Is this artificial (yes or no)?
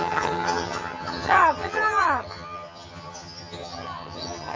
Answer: yes